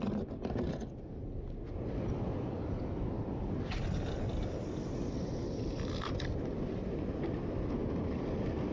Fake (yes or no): no